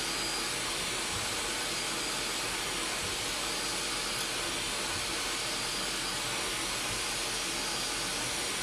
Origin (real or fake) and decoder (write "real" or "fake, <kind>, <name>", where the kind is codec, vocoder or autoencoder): real